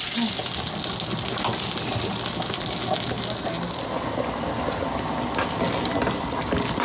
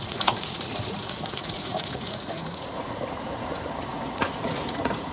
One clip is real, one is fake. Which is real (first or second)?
first